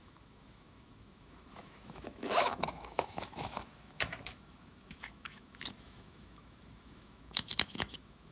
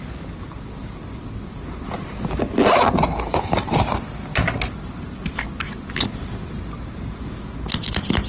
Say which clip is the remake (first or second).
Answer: first